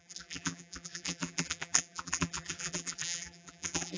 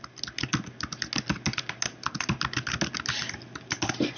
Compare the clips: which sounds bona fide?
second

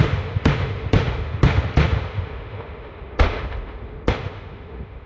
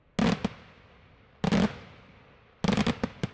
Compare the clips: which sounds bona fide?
second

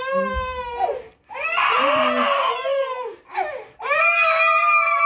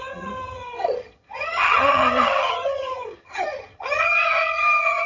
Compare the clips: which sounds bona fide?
first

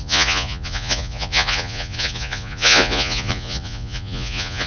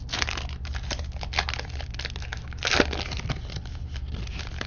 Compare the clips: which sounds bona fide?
second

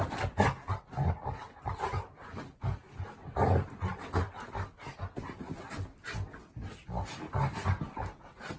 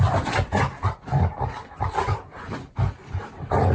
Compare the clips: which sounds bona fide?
first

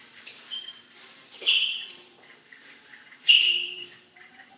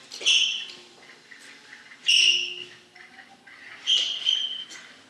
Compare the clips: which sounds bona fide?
second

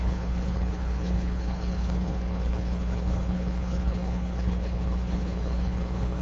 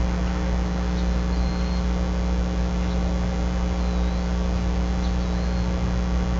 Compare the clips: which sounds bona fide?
second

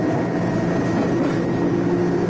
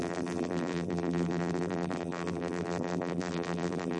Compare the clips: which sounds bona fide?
first